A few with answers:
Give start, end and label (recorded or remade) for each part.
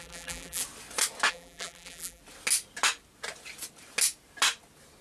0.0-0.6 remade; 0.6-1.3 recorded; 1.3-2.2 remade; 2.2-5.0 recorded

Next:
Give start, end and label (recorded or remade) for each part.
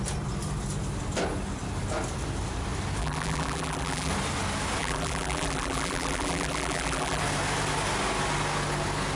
0.0-3.0 recorded; 3.0-4.1 remade; 4.1-4.8 recorded; 4.8-7.2 remade; 7.2-9.2 recorded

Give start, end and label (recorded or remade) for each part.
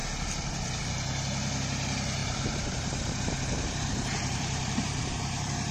0.0-2.2 recorded; 2.2-5.7 remade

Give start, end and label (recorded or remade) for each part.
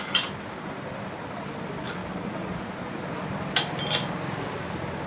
0.0-2.0 recorded; 2.0-2.8 remade; 2.8-5.1 recorded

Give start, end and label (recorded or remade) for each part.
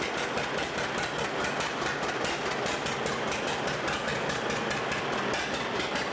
0.0-6.1 recorded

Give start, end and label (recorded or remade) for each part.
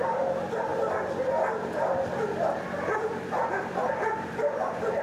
0.0-4.0 recorded; 4.0-5.0 remade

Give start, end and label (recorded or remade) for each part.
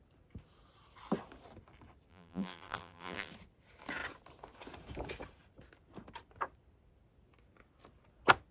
0.0-2.1 recorded; 2.1-3.3 remade; 3.3-8.5 recorded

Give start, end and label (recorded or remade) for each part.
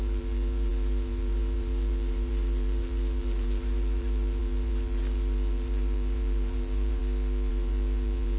0.0-7.0 remade; 7.0-7.5 recorded; 7.5-8.4 remade